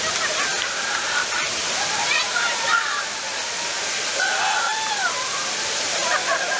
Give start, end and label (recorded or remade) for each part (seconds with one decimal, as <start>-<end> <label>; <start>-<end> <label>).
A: 0.0-3.1 remade; 3.1-4.6 recorded; 4.6-6.6 remade